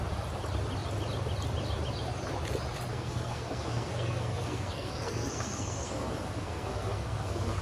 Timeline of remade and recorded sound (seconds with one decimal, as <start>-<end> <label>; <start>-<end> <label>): 0.0-2.9 recorded; 2.9-7.6 remade